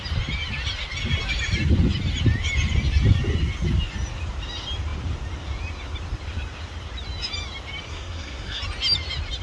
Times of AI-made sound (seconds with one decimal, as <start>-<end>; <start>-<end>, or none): 7.9-8.6